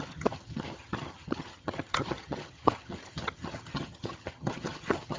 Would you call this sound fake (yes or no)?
yes